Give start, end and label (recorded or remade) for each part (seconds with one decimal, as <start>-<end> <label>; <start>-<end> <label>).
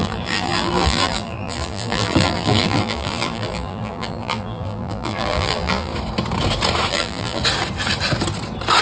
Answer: 0.0-5.9 remade; 5.9-6.9 recorded; 6.9-7.4 remade; 7.4-8.8 recorded